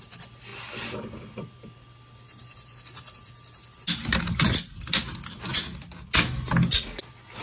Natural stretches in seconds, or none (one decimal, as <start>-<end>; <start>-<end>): 0.0-7.4